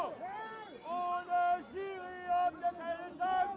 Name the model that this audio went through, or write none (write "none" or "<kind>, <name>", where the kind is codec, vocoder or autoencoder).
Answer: none